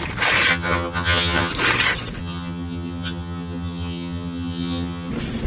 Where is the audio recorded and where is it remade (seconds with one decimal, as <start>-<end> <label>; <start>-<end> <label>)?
0.0-0.5 recorded; 0.5-1.5 remade; 1.5-2.2 recorded; 2.2-5.1 remade; 5.1-5.5 recorded